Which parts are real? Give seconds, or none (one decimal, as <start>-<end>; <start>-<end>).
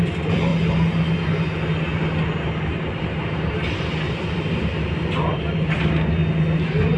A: 0.5-4.5; 6.2-7.0